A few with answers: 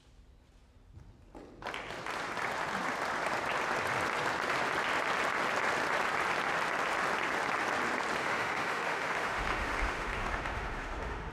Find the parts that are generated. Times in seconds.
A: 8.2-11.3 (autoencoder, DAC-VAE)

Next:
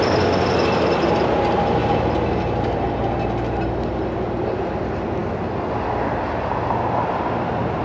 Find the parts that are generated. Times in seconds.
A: none

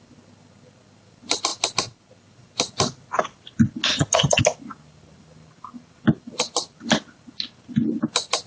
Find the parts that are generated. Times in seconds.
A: 3.9-4.4 (vocoder, HiFi-GAN)

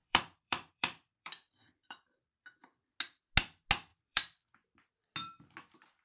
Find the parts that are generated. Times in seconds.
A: 0.0-2.4 (vocoder, BigVGAN v2); 3.9-4.9

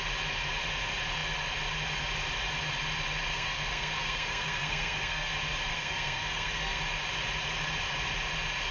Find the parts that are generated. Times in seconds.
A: 3.3-5.3 (codec, SNAC); 5.7-6.8